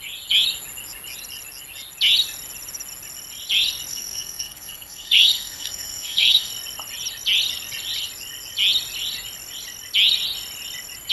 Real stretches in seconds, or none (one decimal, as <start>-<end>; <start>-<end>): 0.0-3.9; 6.5-11.1